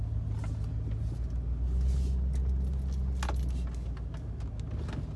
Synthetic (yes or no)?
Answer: no